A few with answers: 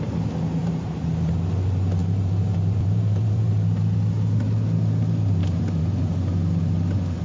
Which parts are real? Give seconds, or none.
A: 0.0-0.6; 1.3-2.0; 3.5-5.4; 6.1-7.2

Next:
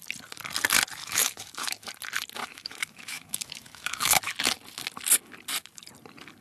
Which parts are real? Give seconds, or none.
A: 0.0-1.0; 1.9-2.4; 4.2-6.4

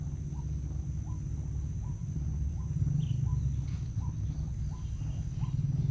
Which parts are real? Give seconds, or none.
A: 0.0-2.0; 2.9-5.9

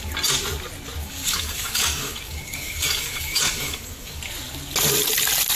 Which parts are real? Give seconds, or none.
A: 0.0-1.0; 4.2-5.6

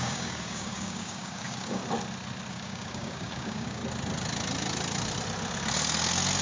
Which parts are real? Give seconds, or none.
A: 1.8-2.5; 3.8-6.4